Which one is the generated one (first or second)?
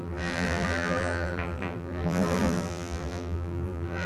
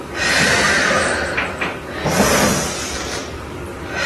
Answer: first